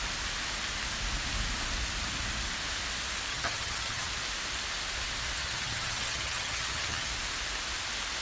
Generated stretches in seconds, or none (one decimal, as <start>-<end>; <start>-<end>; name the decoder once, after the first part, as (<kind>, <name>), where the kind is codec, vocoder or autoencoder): 3.3-4.1 (vocoder, HiFi-GAN); 5.4-7.1

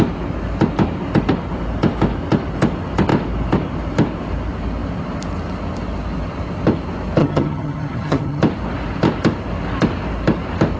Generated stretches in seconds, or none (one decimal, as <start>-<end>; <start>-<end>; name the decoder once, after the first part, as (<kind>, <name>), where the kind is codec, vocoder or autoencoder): 7.2-8.4 (vocoder, HiFi-GAN)

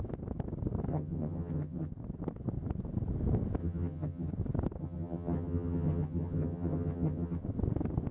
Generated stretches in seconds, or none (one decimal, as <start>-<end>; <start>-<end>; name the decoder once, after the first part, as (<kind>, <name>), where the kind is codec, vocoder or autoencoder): 0.9-1.9 (vocoder, HiFi-GAN); 3.6-4.3; 4.8-7.4